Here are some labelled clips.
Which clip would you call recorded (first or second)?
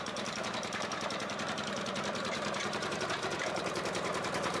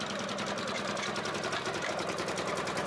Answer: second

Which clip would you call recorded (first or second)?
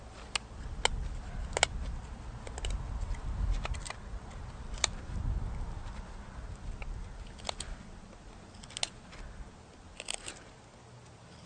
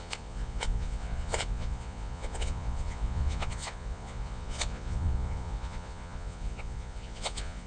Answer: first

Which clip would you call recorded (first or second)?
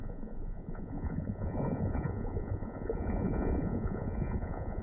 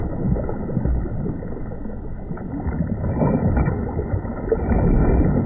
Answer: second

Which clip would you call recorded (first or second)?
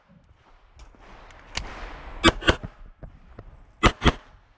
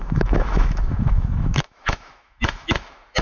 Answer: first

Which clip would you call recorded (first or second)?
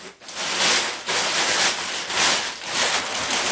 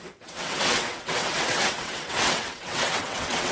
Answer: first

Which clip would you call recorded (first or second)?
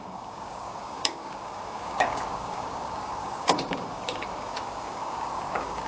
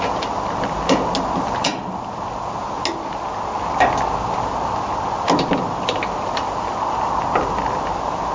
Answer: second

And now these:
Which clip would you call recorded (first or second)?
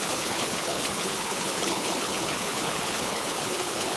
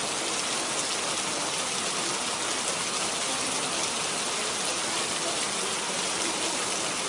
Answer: second